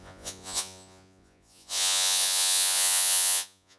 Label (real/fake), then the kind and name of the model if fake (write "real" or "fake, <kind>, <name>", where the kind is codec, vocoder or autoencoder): fake, vocoder, Vocos